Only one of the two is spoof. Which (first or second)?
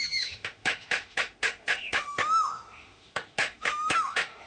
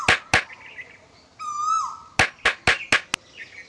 first